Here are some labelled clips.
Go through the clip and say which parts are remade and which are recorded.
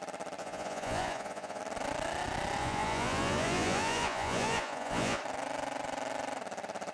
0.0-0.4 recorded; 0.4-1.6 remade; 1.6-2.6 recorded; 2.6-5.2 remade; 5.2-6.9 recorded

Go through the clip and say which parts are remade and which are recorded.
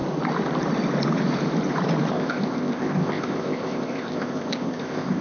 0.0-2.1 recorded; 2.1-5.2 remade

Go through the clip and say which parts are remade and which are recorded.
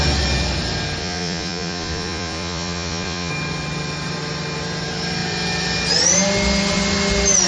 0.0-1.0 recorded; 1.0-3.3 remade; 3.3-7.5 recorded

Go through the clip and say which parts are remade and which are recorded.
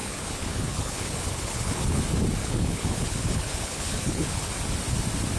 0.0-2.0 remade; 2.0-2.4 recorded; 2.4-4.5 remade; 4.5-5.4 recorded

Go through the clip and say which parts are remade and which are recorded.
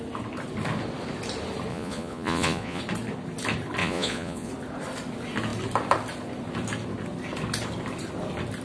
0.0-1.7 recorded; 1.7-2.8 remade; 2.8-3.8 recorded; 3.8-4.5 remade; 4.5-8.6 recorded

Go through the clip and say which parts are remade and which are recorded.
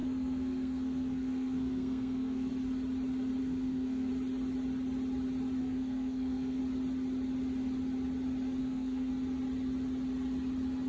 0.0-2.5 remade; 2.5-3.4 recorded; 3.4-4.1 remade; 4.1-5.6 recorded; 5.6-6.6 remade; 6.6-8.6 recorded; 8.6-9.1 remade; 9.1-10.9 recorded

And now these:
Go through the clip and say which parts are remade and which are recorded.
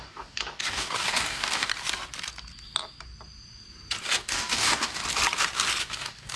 0.0-1.7 remade; 1.7-4.0 recorded; 4.0-5.0 remade; 5.0-5.8 recorded; 5.8-6.4 remade